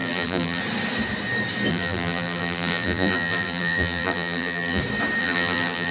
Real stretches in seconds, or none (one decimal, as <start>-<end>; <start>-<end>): 0.6-1.7; 4.8-5.2